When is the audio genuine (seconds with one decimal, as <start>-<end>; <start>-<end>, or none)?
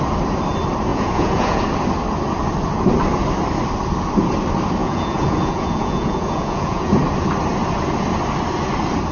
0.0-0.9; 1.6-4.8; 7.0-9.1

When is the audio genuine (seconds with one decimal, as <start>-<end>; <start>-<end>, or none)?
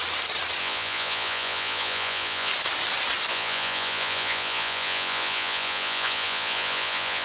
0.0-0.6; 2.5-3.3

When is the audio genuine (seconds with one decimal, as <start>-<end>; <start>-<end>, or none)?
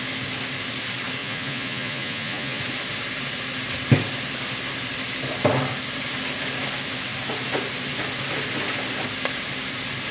0.0-1.2; 2.6-10.1